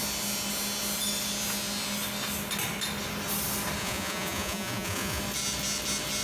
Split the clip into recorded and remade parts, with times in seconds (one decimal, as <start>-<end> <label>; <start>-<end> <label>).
0.0-3.8 recorded; 3.8-5.2 remade; 5.2-6.2 recorded